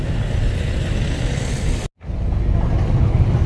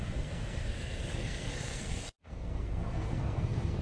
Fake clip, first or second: second